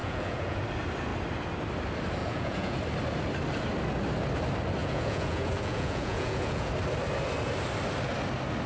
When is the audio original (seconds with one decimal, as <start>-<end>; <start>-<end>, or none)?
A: 0.6-2.2; 2.8-4.8; 6.7-8.7